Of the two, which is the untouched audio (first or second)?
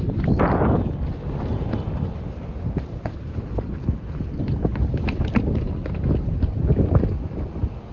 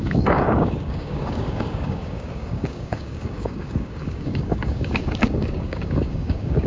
first